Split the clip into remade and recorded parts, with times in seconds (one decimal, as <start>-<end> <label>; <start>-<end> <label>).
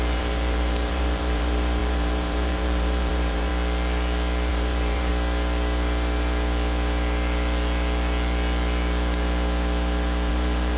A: 0.0-3.5 remade; 3.5-4.5 recorded; 4.5-5.1 remade; 5.1-10.3 recorded; 10.3-10.8 remade